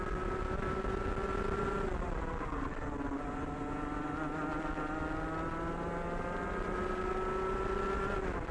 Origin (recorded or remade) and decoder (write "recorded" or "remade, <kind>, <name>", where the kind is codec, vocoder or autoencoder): recorded